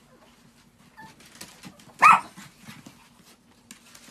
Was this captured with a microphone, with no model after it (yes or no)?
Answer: yes